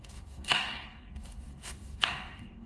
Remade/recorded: remade